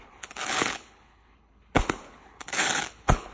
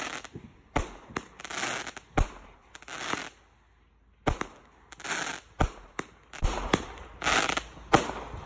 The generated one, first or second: first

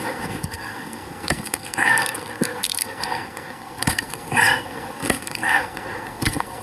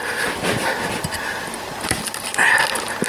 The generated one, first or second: first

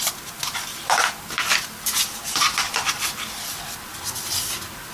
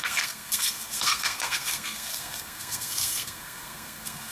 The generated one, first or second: second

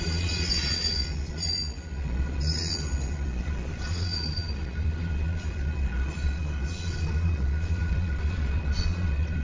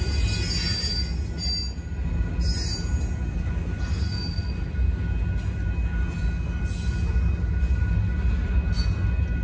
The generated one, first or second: first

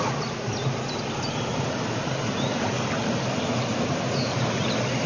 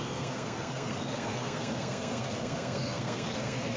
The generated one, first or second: second